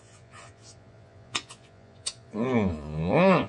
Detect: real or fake fake